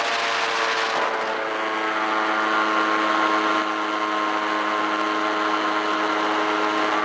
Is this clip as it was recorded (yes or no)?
yes